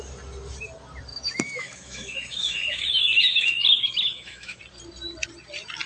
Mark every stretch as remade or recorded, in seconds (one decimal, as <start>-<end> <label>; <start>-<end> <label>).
0.0-1.1 recorded; 1.1-4.6 remade; 4.6-5.9 recorded